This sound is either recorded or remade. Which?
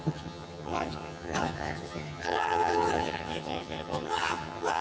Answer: remade